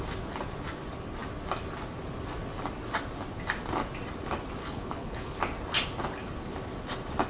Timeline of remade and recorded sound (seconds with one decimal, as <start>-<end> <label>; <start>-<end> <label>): 0.0-4.6 recorded; 4.6-5.4 remade; 5.4-7.3 recorded